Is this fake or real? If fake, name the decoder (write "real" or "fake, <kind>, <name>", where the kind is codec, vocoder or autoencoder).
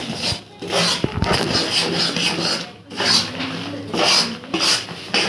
real